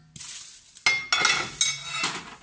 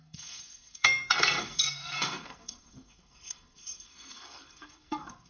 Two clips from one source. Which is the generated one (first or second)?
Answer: second